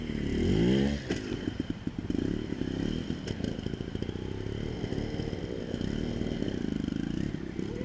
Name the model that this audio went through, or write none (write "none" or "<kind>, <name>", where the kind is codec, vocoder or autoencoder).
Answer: none